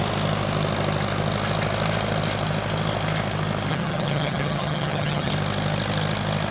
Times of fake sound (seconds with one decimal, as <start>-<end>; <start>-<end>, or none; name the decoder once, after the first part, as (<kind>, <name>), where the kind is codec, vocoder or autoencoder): 3.7-5.3 (vocoder, HiFi-GAN)